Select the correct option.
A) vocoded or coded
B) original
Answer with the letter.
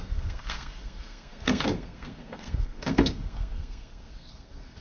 A